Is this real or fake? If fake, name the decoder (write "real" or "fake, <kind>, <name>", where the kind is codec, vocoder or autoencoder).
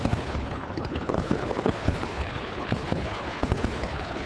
fake, codec, HILCodec